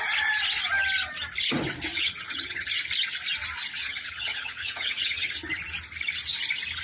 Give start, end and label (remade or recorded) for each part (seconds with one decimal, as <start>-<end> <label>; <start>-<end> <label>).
0.0-1.9 recorded; 1.9-2.8 remade; 2.8-3.8 recorded; 3.8-5.3 remade; 5.3-6.8 recorded